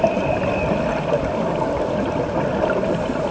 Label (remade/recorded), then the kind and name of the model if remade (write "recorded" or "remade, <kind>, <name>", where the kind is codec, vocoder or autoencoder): recorded